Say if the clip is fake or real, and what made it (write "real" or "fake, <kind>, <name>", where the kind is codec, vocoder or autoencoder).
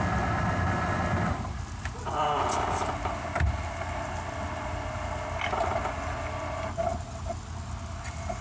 real